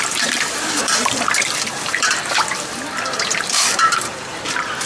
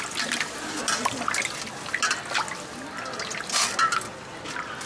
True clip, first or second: second